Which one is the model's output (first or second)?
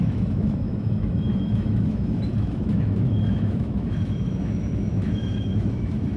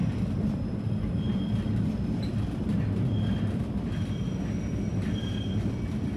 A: first